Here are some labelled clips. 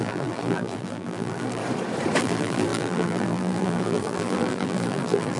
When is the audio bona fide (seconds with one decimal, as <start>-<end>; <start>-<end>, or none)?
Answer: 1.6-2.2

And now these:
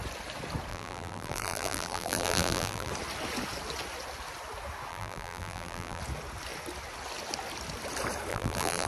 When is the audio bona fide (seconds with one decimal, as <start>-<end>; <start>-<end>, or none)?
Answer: 0.0-0.7; 2.9-4.9; 6.0-8.3

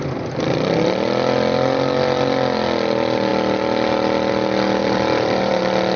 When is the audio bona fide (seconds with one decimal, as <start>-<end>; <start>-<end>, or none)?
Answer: 0.0-4.8; 5.6-6.0

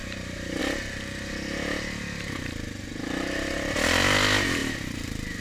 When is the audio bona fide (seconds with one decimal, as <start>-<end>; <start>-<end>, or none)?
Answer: 0.6-4.6

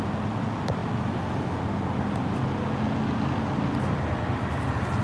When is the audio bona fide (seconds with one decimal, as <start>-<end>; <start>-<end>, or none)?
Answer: 0.0-5.0

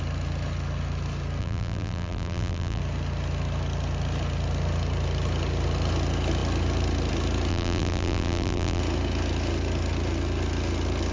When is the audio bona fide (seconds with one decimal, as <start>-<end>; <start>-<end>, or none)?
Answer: 0.0-1.4; 2.8-7.5; 8.8-11.1